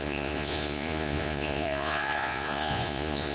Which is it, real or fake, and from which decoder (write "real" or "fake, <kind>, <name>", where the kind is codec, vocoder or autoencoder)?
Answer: fake, vocoder, Vocos